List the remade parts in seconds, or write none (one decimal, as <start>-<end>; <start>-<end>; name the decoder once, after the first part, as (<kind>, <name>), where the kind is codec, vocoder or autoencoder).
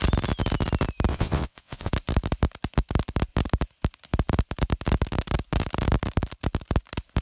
1.1-1.9 (vocoder, WaveNeXt)